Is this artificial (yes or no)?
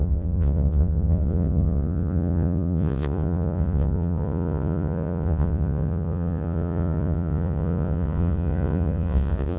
yes